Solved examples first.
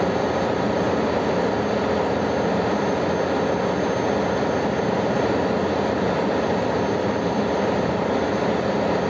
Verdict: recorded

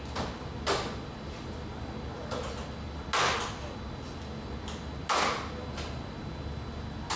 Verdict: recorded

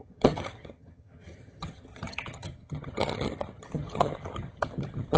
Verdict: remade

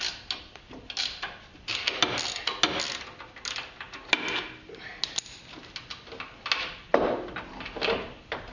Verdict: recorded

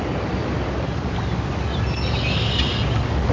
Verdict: recorded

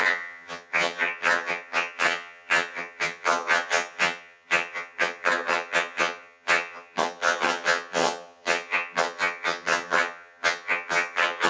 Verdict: remade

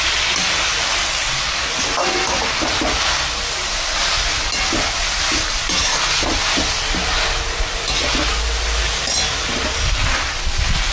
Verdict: recorded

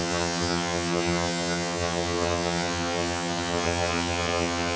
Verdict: remade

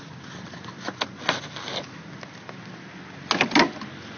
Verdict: recorded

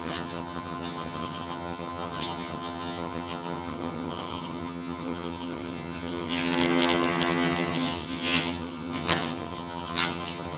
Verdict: remade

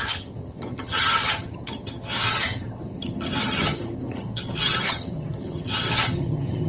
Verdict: remade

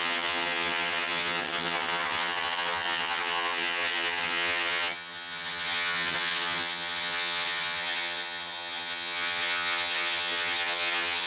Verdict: remade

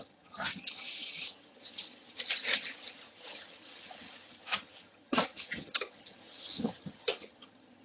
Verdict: remade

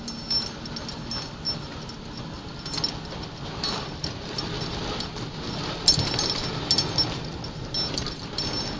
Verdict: recorded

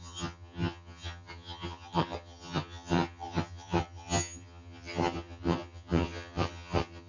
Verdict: remade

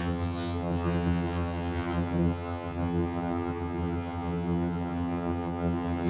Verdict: remade